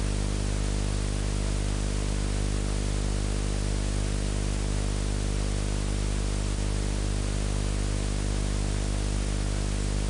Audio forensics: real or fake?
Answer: real